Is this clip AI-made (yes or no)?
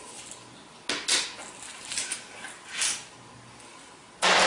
no